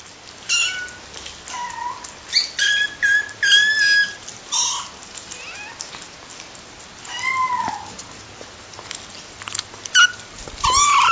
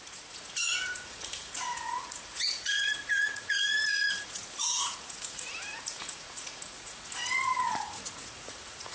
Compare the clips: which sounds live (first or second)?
first